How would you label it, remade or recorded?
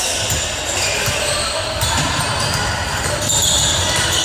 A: recorded